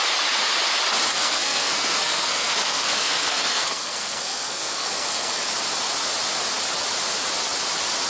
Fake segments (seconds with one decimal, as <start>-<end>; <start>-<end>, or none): 1.1-5.5

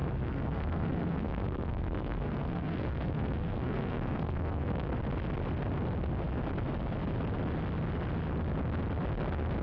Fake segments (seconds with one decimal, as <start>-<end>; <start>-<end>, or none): 0.0-4.9

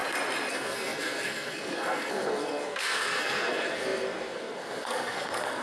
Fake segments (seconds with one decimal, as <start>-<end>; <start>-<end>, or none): 0.5-5.6

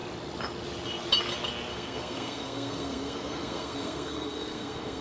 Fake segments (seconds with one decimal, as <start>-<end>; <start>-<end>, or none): 1.7-5.0

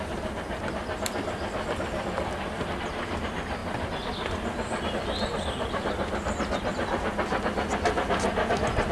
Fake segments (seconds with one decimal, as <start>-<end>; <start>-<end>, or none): none

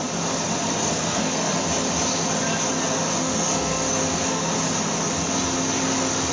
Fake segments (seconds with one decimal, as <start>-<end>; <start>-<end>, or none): 0.6-1.5; 3.2-4.4

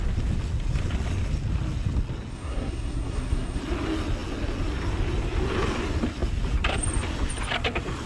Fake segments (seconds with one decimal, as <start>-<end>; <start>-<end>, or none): 2.3-3.6